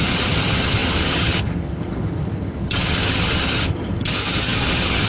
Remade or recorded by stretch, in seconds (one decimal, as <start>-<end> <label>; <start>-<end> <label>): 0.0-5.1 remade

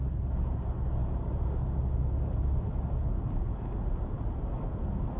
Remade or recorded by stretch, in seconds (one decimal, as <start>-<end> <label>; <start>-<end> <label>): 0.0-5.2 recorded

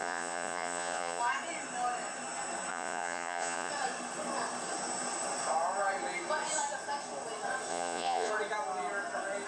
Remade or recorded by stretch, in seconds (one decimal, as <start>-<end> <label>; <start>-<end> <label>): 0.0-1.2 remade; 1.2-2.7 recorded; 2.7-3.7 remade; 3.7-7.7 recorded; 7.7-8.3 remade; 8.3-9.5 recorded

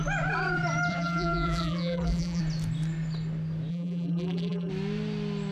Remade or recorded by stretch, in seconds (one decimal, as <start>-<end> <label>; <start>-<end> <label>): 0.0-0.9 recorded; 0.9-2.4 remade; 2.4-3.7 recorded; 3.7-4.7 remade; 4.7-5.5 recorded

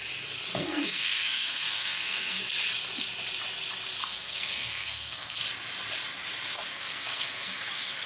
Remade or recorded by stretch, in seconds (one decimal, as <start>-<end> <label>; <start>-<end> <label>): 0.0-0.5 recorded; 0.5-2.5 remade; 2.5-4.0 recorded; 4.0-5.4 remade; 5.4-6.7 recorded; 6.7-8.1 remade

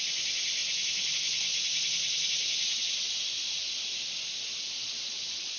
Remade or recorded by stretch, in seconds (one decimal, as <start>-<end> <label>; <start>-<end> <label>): 0.0-0.6 recorded; 0.6-1.1 remade; 1.1-5.6 recorded

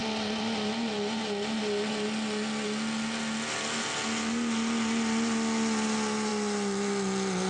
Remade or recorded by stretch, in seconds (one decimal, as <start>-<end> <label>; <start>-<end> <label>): 0.0-1.9 remade; 1.9-7.5 recorded

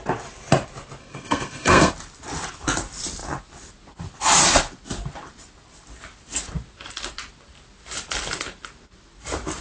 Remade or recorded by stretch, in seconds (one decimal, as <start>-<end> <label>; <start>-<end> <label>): 0.0-1.0 recorded; 1.0-1.9 remade; 1.9-9.6 recorded